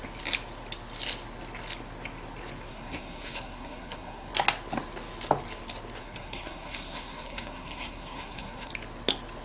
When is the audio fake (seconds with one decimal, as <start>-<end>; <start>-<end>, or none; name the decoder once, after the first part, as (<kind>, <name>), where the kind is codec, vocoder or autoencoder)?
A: 2.7-4.3 (codec, SNAC); 6.0-8.7